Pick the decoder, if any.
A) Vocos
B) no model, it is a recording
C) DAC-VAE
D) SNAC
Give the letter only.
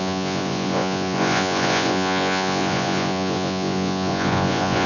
A